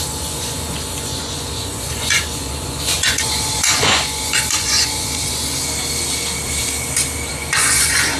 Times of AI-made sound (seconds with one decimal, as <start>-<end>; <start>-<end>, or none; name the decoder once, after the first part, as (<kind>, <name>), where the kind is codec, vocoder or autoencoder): 0.0-5.6 (vocoder, Vocos); 7.3-8.2